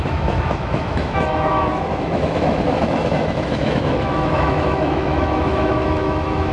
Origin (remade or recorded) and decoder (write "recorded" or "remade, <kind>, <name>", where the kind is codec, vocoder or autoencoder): remade, autoencoder, DAC-VAE